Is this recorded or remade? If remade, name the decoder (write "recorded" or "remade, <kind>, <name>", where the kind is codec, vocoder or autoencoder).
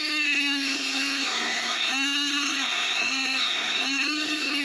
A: remade, codec, SNAC